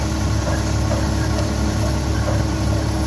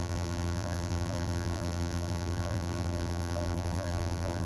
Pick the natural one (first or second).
first